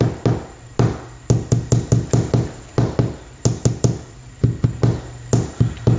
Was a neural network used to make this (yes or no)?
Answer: no